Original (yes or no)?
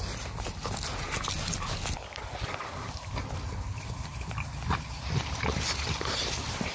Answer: yes